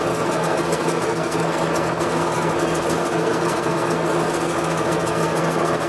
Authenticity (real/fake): fake